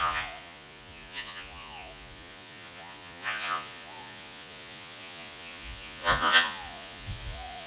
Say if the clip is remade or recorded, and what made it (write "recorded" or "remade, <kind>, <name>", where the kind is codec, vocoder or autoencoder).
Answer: remade, vocoder, Vocos